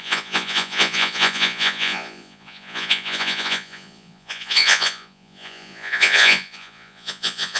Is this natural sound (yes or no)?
no